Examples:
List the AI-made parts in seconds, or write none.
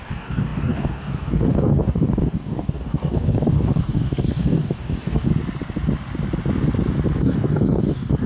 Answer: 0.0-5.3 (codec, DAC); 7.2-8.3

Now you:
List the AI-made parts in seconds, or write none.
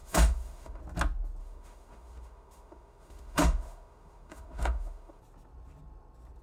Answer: 0.0-0.8 (autoencoder, DAC-VAE); 1.4-5.2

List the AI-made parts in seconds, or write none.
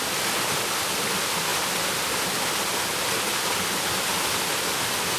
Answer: none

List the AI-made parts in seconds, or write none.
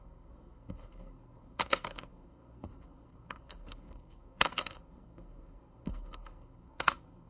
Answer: 0.0-7.3 (codec, SNAC)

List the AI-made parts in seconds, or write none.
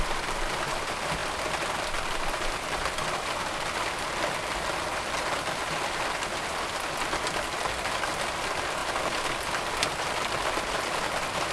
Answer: none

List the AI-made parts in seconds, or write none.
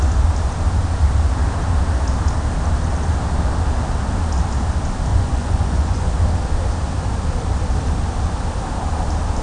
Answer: 5.1-6.1 (vocoder, Vocos)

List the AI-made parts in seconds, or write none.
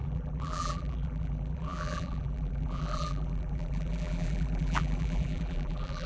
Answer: 0.0-6.1 (vocoder, BigVGAN v2)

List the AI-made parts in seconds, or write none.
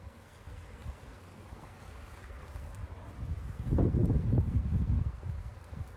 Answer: 0.0-2.8 (codec, SNAC); 3.4-6.0